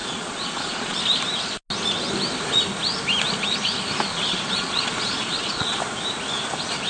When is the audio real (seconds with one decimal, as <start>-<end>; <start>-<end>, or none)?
1.0-4.1; 5.8-6.9

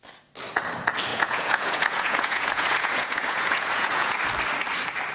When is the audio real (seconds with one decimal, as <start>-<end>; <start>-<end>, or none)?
0.0-1.1; 4.2-5.1

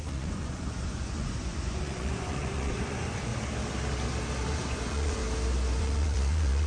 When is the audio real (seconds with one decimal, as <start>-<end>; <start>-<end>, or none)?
3.3-4.6; 5.2-5.8

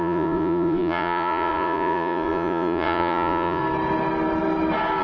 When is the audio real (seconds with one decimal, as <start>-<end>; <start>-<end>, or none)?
3.6-5.0

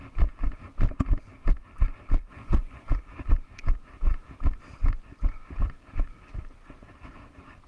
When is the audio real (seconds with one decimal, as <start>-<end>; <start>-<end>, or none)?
0.0-2.3; 2.9-4.8; 5.5-7.7

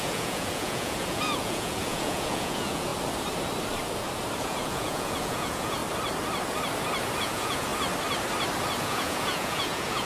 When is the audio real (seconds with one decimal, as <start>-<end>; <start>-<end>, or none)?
2.9-4.4; 5.8-7.2; 7.7-8.8